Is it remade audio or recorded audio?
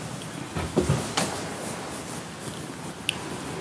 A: recorded